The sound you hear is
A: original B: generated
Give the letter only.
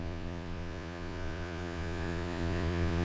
B